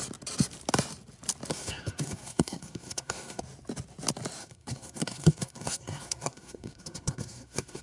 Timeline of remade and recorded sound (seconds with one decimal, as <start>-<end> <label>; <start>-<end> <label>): 0.0-1.5 recorded; 1.5-3.4 remade; 3.4-4.4 recorded; 4.4-7.8 remade